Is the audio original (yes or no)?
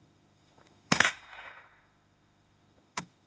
no